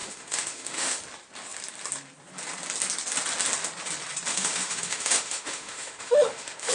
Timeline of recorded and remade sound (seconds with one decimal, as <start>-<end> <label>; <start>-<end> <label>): 0.0-1.0 remade; 1.0-4.3 recorded; 4.3-6.7 remade